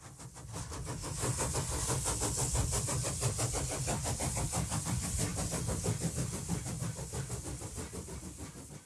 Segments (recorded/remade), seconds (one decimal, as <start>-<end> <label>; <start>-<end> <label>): 0.0-8.9 recorded